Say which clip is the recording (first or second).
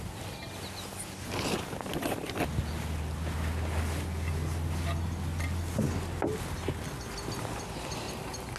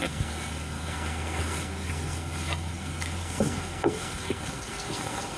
first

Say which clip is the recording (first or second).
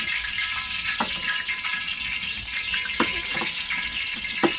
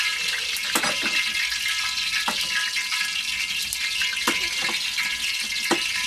second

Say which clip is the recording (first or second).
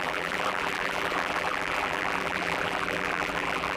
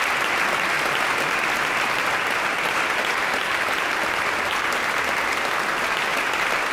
second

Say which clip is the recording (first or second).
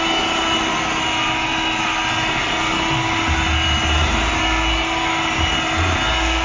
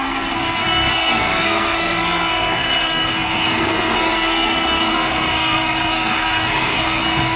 first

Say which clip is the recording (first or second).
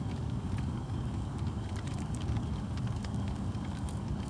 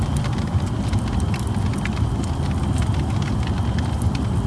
second